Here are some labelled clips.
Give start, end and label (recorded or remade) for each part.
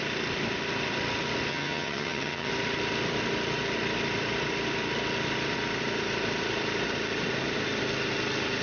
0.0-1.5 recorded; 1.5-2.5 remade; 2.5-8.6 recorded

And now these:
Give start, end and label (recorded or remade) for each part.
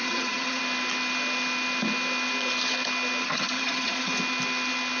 0.0-0.6 remade; 0.6-3.2 recorded; 3.2-4.1 remade; 4.1-5.0 recorded